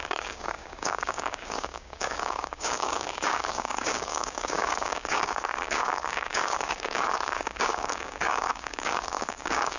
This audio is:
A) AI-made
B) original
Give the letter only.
A